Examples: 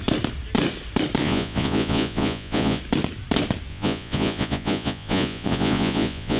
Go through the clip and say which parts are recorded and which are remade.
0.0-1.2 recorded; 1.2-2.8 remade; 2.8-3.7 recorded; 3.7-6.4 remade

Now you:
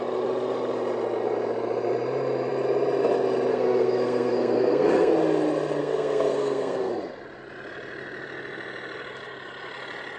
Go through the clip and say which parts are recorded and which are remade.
0.0-3.5 recorded; 3.5-5.1 remade; 5.1-5.8 recorded; 5.8-6.9 remade; 6.9-10.2 recorded

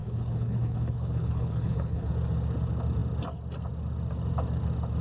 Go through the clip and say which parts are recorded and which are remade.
0.0-2.1 remade; 2.1-5.0 recorded